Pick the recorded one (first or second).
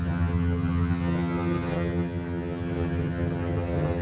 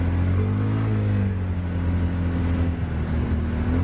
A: second